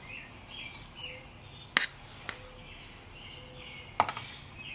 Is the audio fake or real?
real